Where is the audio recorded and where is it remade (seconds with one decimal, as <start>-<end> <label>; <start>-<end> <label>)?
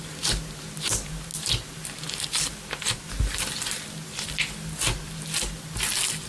0.0-6.3 recorded